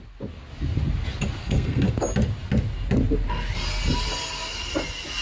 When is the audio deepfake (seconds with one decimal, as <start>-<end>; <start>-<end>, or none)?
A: 1.4-1.9